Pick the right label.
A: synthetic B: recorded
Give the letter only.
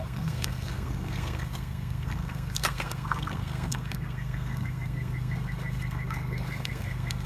A